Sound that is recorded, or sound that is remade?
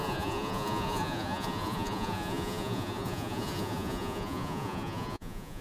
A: remade